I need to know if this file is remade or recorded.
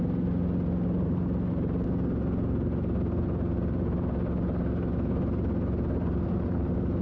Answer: recorded